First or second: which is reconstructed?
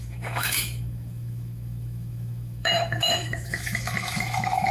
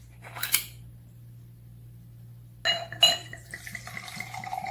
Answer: first